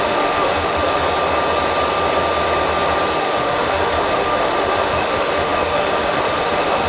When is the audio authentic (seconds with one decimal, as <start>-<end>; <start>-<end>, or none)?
1.0-3.2